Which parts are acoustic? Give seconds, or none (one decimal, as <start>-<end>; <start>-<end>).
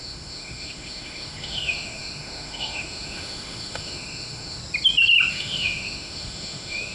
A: 4.6-5.3